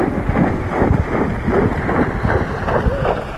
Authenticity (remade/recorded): recorded